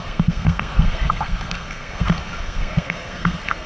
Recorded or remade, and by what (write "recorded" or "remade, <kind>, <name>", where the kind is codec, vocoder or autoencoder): remade, codec, SNAC